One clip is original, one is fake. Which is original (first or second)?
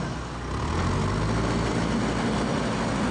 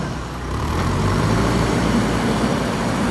first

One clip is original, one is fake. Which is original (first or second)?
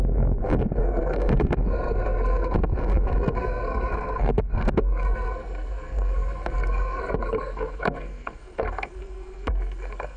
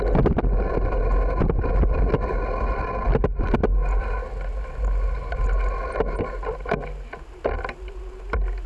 second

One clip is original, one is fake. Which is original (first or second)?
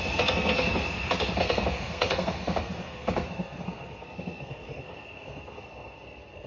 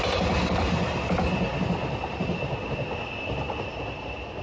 second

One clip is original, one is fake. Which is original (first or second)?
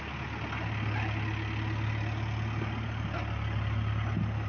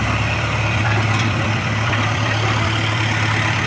first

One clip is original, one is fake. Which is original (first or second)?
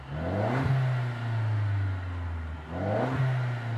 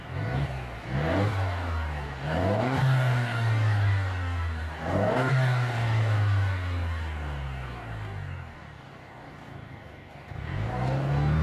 first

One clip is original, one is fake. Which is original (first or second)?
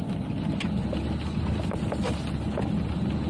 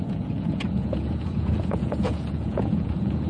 first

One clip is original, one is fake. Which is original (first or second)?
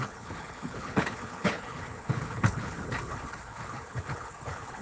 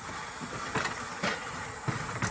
second